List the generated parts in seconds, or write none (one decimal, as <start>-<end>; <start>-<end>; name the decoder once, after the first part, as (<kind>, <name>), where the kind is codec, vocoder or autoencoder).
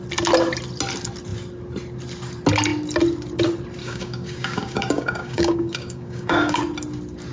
3.8-6.6 (codec, DAC)